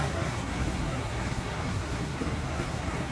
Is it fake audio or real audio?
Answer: fake